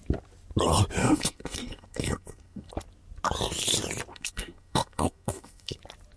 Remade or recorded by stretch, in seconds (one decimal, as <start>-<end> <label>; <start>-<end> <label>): 0.0-1.0 recorded; 1.0-2.7 remade; 2.7-4.1 recorded; 4.1-5.8 remade; 5.8-6.2 recorded